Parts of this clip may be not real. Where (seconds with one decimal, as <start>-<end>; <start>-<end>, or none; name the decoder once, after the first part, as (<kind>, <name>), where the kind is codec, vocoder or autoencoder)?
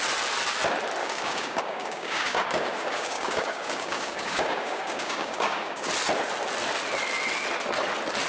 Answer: 1.0-5.9 (codec, DAC)